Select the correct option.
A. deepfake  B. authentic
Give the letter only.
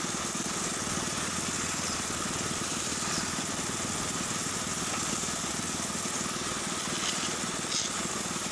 B